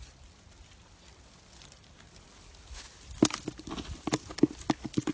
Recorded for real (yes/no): yes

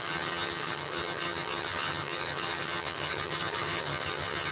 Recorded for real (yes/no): no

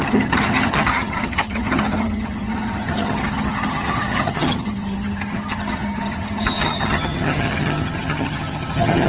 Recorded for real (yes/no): no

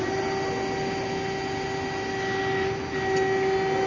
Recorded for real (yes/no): yes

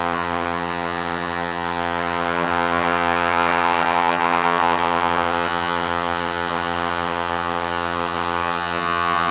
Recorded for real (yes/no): no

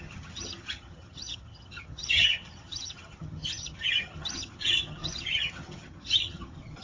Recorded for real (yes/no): no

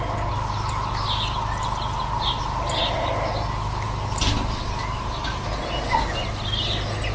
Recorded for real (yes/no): yes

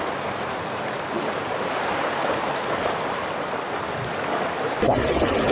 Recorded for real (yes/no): yes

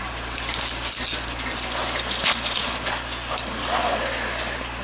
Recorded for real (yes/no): yes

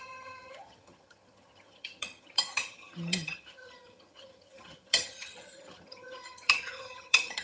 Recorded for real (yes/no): no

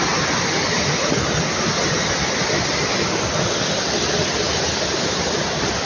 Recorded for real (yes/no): yes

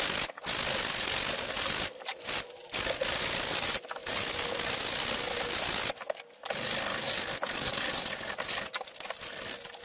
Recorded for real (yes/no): yes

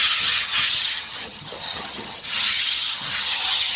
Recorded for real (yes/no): no